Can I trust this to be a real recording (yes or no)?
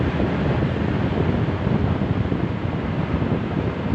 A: yes